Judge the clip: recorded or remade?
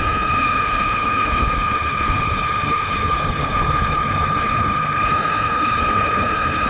remade